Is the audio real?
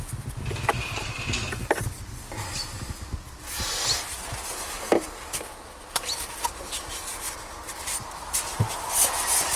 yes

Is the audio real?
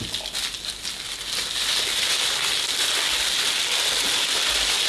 yes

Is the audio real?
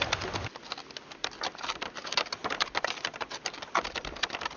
yes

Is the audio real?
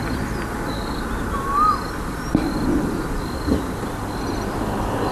yes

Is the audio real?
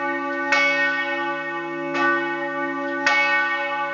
yes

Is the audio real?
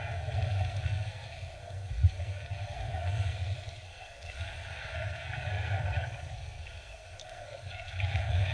no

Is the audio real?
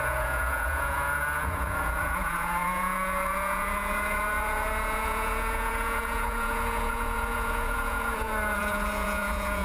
no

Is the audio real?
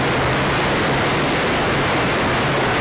yes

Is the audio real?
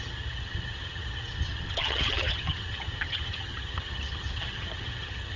no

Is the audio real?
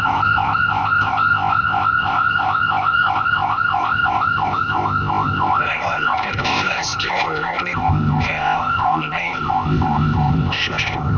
no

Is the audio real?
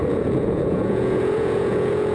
no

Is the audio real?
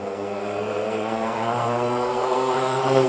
no